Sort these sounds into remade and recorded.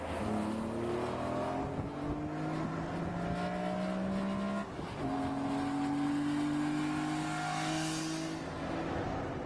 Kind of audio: recorded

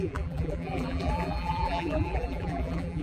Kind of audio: remade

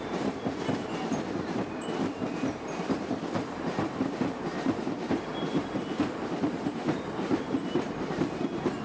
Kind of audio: remade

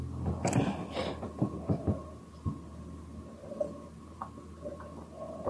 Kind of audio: recorded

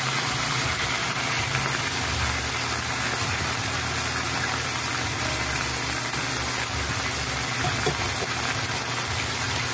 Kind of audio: recorded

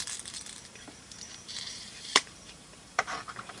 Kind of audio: remade